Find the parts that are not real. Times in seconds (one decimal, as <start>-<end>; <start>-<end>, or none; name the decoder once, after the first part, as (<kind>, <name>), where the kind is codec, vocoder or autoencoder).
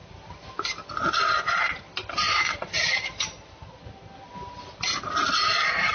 none